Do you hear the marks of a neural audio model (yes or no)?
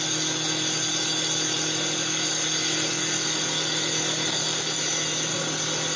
no